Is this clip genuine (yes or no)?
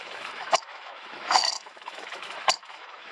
no